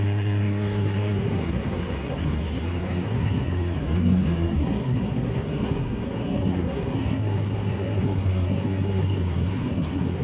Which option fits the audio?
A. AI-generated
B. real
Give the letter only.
A